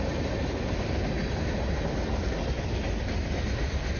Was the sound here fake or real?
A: real